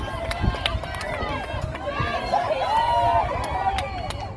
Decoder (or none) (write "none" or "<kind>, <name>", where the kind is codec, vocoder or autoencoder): none